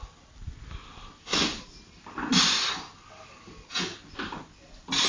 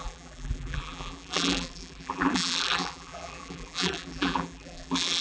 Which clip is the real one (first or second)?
first